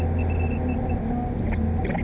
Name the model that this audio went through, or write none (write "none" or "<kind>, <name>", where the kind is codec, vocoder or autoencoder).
none